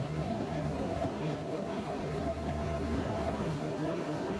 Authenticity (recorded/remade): remade